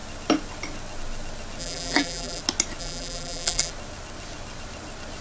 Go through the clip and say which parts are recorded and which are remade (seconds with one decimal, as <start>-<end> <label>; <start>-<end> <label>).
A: 0.0-1.6 recorded; 1.6-2.4 remade; 2.4-2.8 recorded; 2.8-3.7 remade; 3.7-5.2 recorded